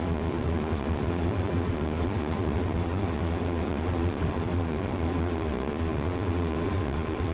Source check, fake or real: fake